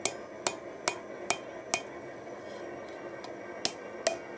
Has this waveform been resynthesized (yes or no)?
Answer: no